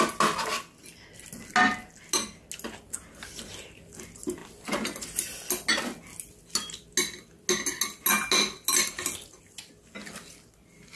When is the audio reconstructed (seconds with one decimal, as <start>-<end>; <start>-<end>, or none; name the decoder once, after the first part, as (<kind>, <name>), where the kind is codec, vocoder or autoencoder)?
none